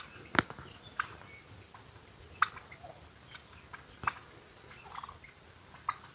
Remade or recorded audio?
recorded